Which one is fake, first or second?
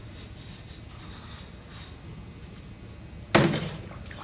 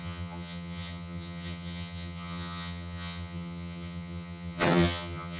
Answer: second